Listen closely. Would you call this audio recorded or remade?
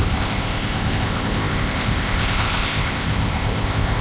remade